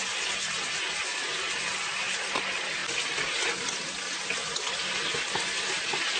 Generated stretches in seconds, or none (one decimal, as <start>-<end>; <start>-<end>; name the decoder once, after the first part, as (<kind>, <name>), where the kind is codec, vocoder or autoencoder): none